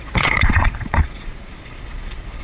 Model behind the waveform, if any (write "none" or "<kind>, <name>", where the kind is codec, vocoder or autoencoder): vocoder, Vocos